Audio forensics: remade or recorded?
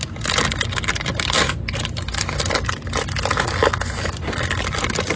recorded